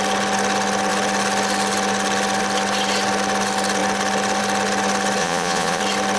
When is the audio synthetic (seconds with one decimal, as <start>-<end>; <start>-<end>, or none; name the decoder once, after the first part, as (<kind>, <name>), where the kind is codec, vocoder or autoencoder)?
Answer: 5.2-5.8 (vocoder, Vocos)